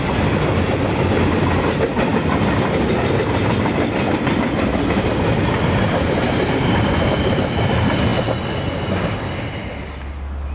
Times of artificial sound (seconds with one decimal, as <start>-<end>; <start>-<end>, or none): none